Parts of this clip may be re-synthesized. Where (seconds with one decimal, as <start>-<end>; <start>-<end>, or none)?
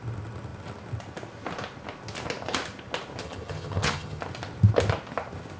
3.2-4.2